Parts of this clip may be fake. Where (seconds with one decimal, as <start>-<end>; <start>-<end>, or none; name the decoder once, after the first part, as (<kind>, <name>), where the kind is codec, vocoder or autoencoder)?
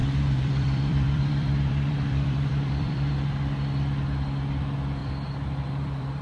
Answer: 0.0-3.1 (vocoder, BigVGAN v2); 5.0-6.2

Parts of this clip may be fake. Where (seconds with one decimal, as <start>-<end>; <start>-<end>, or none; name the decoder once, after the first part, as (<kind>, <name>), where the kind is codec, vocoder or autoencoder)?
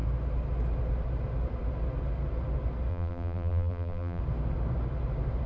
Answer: 2.9-4.2 (vocoder, BigVGAN v2)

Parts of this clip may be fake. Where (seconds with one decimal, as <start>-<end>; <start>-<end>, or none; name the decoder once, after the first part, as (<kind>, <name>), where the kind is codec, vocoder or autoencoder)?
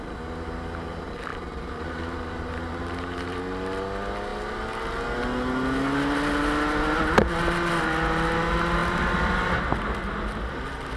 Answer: 1.3-3.4 (vocoder, BigVGAN v2)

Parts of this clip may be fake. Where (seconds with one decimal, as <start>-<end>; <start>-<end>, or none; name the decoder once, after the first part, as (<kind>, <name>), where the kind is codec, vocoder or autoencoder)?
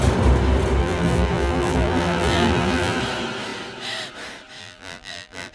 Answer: 0.8-3.0 (vocoder, BigVGAN v2); 4.6-5.5